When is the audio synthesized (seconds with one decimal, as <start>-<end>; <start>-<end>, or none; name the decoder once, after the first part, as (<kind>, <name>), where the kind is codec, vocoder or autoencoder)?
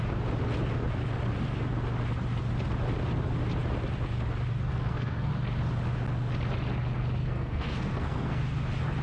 4.7-5.3 (codec, SNAC); 7.2-8.4